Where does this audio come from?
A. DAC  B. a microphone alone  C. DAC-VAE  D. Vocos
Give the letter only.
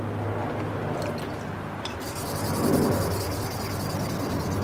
B